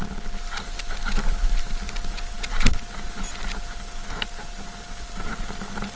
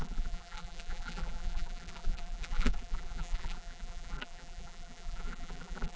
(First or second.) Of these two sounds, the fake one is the second